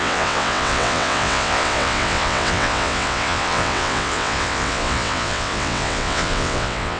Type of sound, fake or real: fake